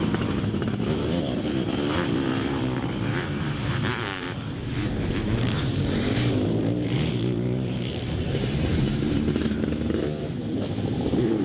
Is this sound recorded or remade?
remade